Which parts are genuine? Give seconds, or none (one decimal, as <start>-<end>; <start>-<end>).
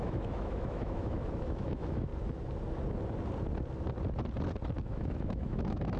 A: 2.1-4.8